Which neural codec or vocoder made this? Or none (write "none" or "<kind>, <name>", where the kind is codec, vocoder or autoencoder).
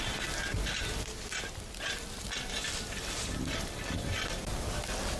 vocoder, BigVGAN v2